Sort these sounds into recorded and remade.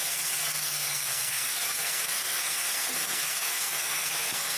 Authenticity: remade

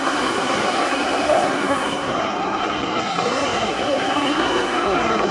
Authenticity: remade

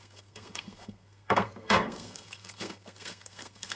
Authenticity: remade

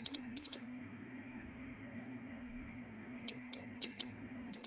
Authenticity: remade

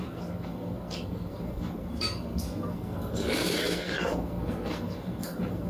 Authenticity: remade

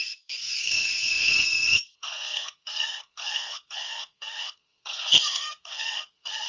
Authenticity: remade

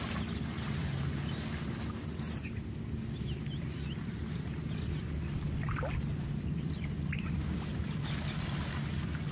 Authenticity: recorded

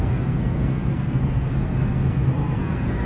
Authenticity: remade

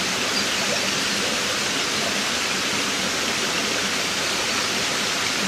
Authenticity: recorded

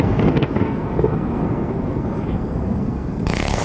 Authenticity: remade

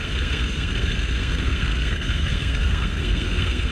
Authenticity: remade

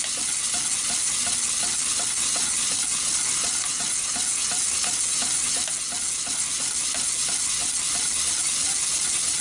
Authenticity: recorded